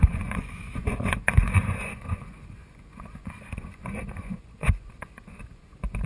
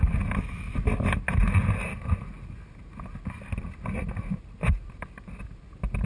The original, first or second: second